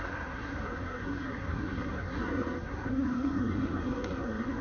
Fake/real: fake